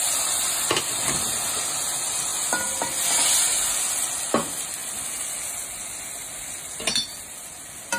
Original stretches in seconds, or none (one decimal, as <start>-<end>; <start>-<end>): 0.0-8.0